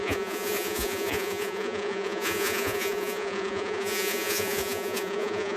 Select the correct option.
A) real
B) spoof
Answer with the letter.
B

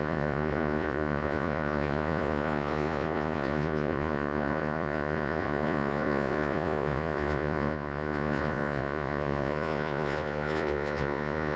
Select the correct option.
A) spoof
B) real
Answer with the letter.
A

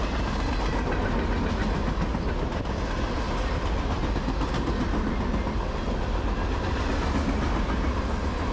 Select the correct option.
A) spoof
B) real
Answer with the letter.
B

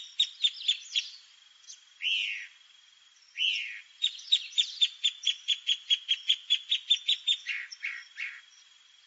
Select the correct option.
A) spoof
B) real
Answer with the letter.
B